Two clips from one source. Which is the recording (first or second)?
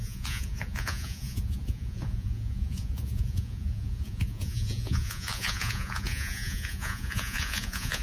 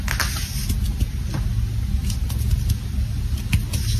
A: second